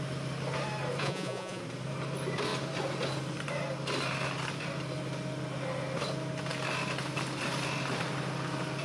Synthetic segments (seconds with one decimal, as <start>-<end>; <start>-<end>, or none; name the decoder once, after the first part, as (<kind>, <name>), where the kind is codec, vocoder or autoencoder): 1.0-1.6 (vocoder, Vocos)